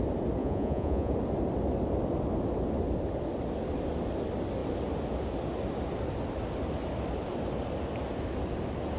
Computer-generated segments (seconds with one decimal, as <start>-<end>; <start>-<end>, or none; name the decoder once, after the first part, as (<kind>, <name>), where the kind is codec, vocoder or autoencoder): 0.4-1.1 (vocoder, Vocos)